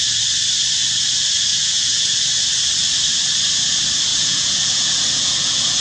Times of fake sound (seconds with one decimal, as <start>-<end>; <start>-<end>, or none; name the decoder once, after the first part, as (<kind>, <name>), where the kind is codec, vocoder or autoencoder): 1.5-2.2 (vocoder, Vocos); 4.1-5.8

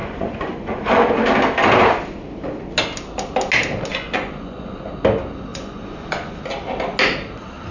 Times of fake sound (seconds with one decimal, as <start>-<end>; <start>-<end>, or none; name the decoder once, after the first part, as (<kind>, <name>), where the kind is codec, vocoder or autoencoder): 0.0-1.1 (vocoder, Vocos); 3.9-4.9; 5.5-6.4

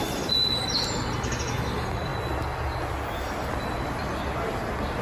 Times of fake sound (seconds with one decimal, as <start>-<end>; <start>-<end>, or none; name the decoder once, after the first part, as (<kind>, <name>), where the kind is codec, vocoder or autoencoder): none